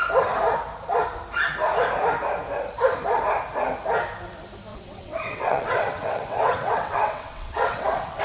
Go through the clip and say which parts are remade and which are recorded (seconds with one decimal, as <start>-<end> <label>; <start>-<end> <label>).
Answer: 0.0-4.7 recorded; 4.7-8.2 remade